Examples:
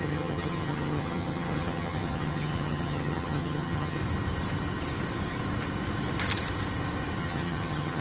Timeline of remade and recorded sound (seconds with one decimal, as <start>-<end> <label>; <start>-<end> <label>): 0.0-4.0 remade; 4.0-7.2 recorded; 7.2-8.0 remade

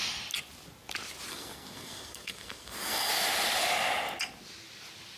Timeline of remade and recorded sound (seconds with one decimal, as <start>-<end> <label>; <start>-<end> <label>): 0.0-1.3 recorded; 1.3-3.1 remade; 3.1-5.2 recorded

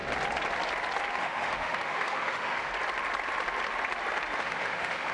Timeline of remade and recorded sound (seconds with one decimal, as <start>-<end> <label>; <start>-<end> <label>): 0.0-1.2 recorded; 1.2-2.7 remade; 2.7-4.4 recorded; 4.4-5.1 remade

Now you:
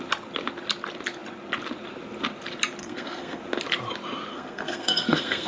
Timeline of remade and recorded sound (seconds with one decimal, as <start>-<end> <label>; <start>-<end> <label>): 0.0-2.8 recorded; 2.8-3.4 remade; 3.4-4.3 recorded; 4.3-5.5 remade

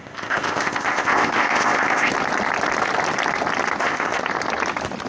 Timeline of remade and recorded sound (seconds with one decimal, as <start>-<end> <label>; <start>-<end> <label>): 0.0-2.1 remade; 2.1-3.8 recorded; 3.8-4.2 remade; 4.2-5.1 recorded

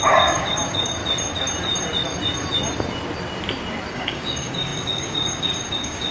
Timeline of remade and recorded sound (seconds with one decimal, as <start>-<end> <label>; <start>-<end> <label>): 0.0-1.0 remade; 1.0-3.9 recorded; 3.9-6.1 remade

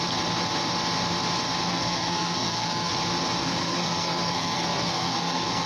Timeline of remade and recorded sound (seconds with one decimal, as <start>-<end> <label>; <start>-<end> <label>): 0.0-1.7 recorded; 1.7-2.9 remade; 2.9-3.4 recorded; 3.4-5.7 remade

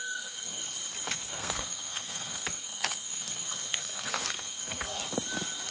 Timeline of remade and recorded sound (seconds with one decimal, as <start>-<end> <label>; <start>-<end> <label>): 0.0-0.6 remade; 0.6-1.1 recorded; 1.1-5.0 remade; 5.0-5.7 recorded